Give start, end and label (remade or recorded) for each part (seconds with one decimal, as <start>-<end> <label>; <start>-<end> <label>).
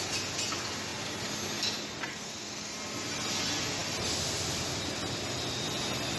0.0-2.1 recorded; 2.1-2.7 remade; 2.7-6.2 recorded